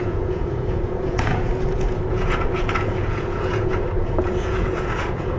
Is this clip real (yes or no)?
no